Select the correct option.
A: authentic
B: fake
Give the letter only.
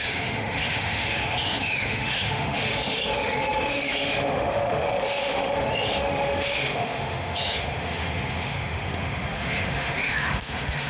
B